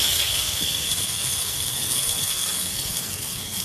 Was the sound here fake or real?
fake